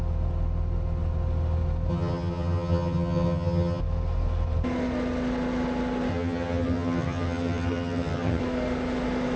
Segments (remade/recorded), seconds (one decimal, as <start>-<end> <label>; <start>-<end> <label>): 0.0-1.9 recorded; 1.9-3.8 remade; 3.8-6.1 recorded; 6.1-8.4 remade; 8.4-9.4 recorded